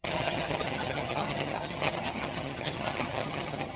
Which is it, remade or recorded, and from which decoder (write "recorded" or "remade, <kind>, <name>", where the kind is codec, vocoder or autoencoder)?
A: remade, vocoder, HiFi-GAN